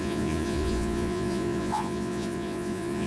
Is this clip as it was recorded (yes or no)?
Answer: no